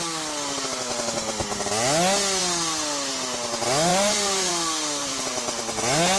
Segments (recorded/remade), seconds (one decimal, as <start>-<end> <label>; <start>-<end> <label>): 0.0-3.9 recorded; 3.9-4.5 remade; 4.5-5.0 recorded; 5.0-5.6 remade; 5.6-6.2 recorded